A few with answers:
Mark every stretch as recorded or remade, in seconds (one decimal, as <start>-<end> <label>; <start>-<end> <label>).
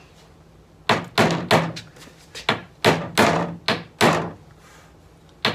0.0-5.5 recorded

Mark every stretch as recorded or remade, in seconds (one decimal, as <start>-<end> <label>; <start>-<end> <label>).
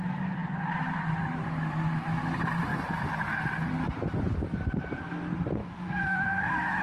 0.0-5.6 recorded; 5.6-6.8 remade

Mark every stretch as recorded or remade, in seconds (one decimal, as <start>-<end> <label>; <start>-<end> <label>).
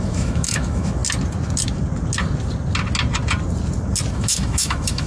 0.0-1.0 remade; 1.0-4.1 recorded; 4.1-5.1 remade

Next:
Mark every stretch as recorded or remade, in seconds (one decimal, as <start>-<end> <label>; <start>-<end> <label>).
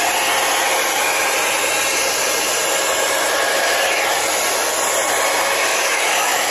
0.0-5.7 recorded; 5.7-6.5 remade